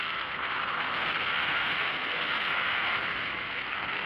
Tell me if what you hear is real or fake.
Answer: fake